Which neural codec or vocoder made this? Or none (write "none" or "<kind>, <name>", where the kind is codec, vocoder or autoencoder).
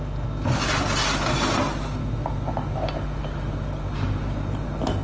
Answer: none